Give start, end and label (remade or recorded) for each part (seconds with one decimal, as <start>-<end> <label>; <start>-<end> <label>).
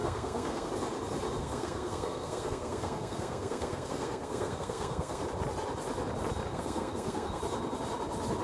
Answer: 0.0-0.7 remade; 0.7-1.4 recorded; 1.4-5.2 remade; 5.2-6.5 recorded; 6.5-7.4 remade; 7.4-8.4 recorded